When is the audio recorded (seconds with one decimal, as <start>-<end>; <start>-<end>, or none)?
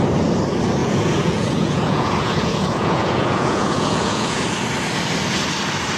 0.0-0.8; 4.4-6.0